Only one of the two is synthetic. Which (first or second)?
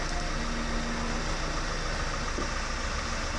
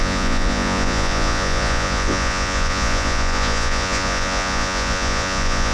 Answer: second